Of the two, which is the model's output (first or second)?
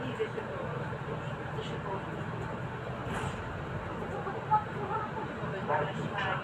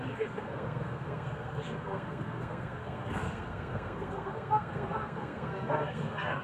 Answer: second